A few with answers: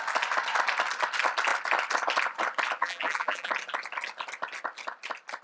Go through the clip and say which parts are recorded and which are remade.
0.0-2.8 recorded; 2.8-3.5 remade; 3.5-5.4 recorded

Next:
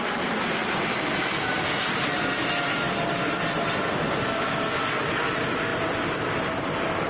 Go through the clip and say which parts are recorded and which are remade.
0.0-7.1 recorded

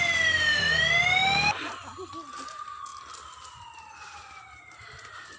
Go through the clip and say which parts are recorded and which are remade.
0.0-5.4 recorded